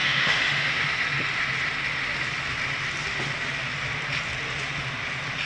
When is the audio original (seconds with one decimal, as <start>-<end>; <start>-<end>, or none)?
0.7-5.5